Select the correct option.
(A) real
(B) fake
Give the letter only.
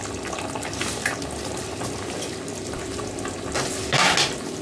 A